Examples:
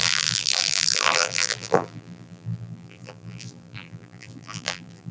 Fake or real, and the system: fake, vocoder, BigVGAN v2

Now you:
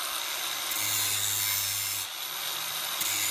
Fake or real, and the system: real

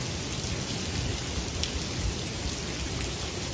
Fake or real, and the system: real